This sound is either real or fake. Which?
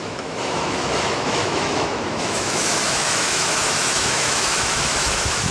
fake